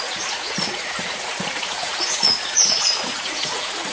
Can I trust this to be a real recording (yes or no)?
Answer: no